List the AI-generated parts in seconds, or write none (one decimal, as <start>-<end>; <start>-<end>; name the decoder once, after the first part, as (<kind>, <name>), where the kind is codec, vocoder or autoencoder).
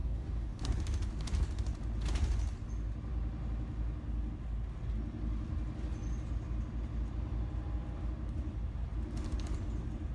0.0-0.6 (codec, DAC)